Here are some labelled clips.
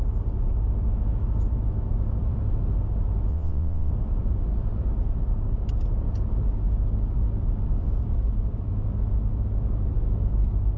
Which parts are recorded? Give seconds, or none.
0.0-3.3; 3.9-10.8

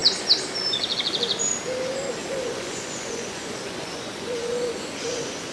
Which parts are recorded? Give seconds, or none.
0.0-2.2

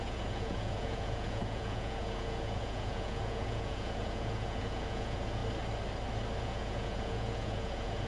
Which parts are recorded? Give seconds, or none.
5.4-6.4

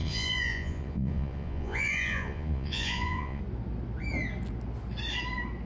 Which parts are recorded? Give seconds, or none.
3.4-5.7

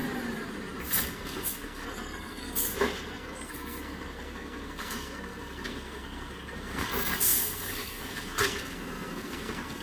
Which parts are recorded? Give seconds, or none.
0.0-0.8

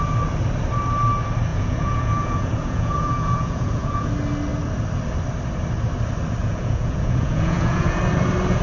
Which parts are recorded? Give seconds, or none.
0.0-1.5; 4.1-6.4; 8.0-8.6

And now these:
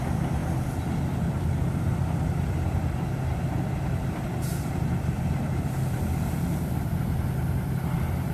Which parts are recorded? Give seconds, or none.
0.0-0.4; 1.8-3.3; 7.7-8.3